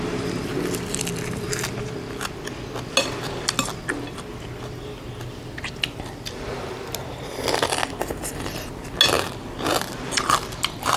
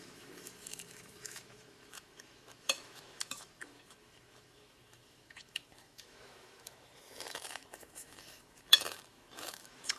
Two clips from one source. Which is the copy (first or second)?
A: second